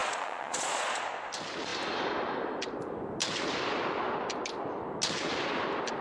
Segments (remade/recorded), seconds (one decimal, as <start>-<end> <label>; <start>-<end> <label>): 0.0-1.0 remade; 1.0-6.0 recorded